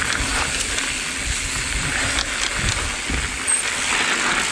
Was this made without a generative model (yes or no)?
yes